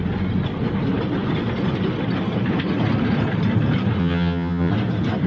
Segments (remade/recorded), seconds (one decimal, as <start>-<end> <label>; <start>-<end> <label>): 0.0-4.0 recorded; 4.0-4.7 remade; 4.7-5.3 recorded